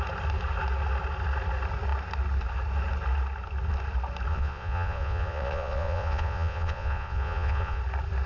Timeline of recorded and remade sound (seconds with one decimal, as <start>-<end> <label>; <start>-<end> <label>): 0.0-4.3 recorded; 4.3-7.8 remade; 7.8-8.3 recorded